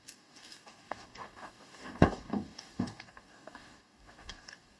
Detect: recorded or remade remade